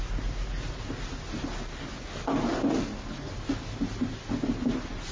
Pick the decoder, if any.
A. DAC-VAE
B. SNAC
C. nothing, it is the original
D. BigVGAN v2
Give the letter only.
C